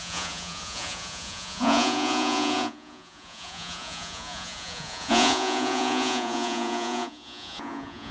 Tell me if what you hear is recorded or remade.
remade